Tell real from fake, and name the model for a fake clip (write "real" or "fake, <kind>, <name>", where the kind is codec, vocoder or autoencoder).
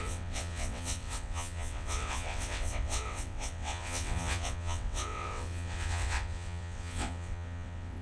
fake, vocoder, WaveNeXt